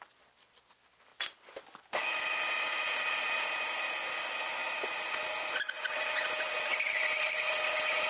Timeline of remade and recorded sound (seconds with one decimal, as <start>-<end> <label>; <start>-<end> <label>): 0.0-8.1 recorded